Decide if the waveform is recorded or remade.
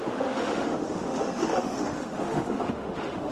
remade